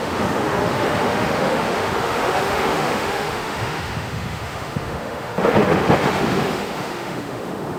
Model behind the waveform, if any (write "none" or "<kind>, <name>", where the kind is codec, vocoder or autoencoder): autoencoder, DAC-VAE